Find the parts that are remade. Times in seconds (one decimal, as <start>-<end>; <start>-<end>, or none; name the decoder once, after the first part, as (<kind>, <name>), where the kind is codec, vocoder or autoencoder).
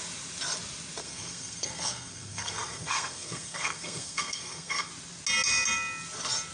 1.0-4.9 (codec, SNAC)